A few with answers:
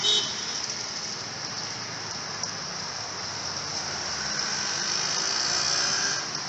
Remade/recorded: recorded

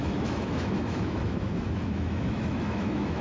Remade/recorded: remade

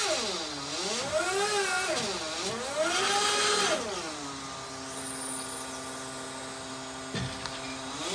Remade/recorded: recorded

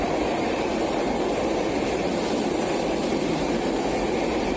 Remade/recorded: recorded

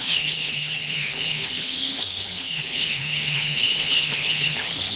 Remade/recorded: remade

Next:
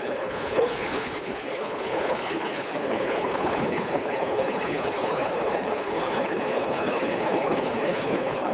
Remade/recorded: remade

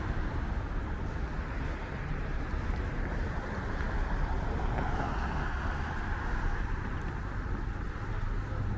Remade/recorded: recorded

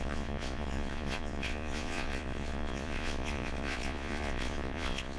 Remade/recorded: remade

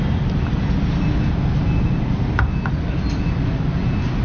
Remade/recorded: recorded